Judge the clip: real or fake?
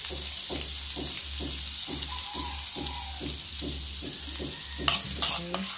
real